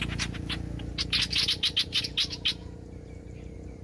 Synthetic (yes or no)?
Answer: no